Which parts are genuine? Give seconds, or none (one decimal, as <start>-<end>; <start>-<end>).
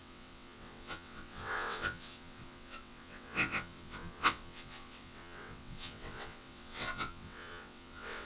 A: none